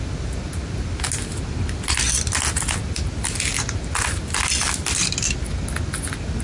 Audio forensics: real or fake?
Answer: real